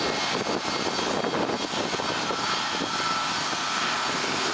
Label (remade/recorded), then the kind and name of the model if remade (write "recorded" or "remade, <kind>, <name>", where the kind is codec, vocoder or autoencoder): recorded